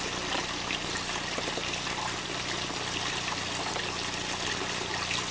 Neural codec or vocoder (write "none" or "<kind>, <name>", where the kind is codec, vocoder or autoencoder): none